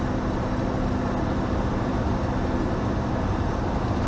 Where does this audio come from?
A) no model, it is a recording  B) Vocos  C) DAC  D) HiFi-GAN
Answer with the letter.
A